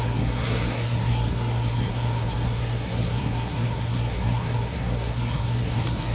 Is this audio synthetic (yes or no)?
yes